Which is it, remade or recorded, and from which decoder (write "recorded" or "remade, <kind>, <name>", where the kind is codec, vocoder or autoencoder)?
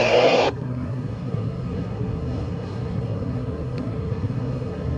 remade, codec, SNAC